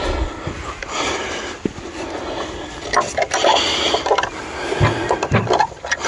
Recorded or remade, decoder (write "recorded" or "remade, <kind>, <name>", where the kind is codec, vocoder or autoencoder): recorded